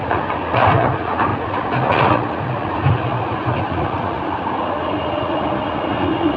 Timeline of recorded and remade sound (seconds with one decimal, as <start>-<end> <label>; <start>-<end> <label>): 0.0-6.4 remade